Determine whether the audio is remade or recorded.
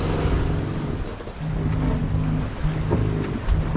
recorded